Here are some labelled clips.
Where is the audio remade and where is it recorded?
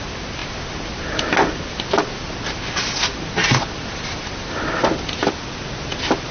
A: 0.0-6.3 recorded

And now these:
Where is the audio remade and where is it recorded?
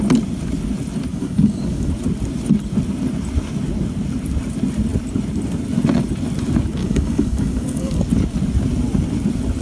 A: 0.0-1.1 recorded; 1.1-1.9 remade; 1.9-6.8 recorded; 6.8-8.0 remade; 8.0-9.6 recorded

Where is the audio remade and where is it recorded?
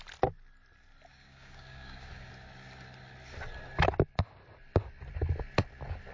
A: 0.0-1.1 recorded; 1.1-2.3 remade; 2.3-6.1 recorded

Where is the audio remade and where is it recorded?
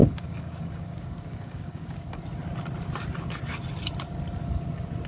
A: 0.0-2.2 remade; 2.2-5.1 recorded